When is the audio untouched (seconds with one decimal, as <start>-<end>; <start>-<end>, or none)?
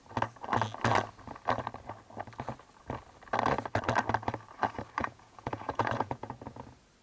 0.0-5.0; 6.3-7.0